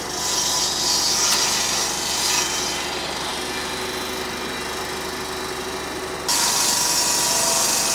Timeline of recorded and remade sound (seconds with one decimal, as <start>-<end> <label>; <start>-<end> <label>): 0.0-7.9 recorded